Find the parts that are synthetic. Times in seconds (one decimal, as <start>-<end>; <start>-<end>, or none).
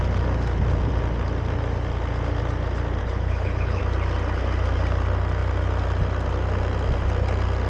3.0-3.8